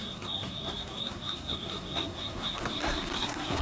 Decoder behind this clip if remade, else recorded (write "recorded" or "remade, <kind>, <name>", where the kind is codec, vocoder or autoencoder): remade, codec, SNAC